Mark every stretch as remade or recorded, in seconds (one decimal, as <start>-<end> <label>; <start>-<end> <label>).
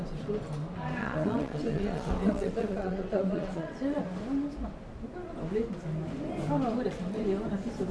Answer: 0.0-1.0 recorded; 1.0-4.0 remade; 4.0-7.9 recorded